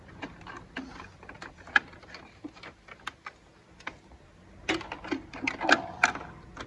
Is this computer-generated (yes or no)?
yes